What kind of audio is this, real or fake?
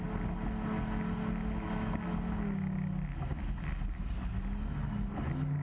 real